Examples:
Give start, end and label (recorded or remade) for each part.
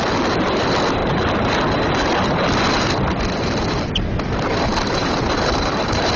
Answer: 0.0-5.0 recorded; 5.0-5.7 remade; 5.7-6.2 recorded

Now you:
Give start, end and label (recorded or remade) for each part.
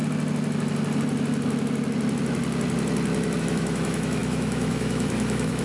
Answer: 0.0-3.4 recorded; 3.4-5.6 remade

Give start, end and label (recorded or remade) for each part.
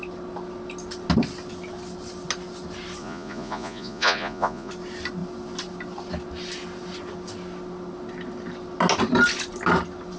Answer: 0.0-3.0 recorded; 3.0-4.7 remade; 4.7-10.2 recorded